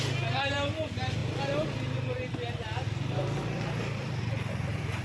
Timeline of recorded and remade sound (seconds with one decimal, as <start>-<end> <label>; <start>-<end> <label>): 0.0-5.0 recorded